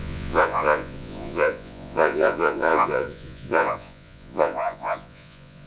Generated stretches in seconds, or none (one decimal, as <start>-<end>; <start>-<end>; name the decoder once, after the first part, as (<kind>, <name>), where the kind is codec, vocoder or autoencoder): 0.0-5.7 (vocoder, Vocos)